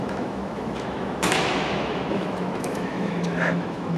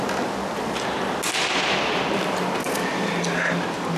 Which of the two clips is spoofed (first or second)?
first